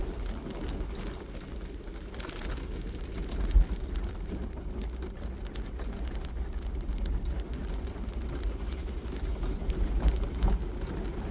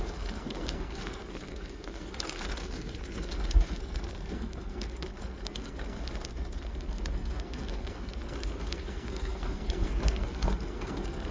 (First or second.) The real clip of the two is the first